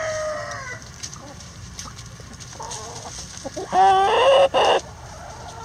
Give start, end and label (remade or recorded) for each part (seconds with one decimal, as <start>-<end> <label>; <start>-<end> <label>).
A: 0.0-0.7 recorded; 0.7-1.9 remade; 1.9-5.6 recorded